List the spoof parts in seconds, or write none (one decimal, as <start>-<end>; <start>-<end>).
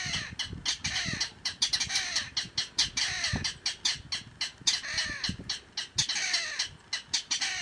none